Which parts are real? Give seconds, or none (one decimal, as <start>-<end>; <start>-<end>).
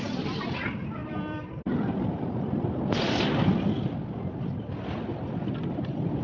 0.0-1.0; 4.7-6.2